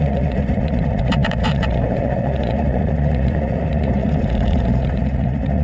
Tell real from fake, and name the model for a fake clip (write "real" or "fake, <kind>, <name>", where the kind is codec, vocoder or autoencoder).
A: fake, vocoder, Vocos